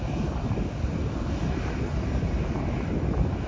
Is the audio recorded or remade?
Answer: recorded